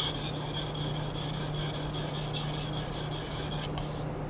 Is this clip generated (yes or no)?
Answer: no